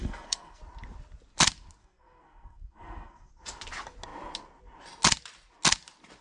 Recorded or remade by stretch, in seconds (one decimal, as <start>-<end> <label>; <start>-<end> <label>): 0.0-0.6 remade; 0.6-1.8 recorded; 1.8-3.3 remade; 3.3-6.2 recorded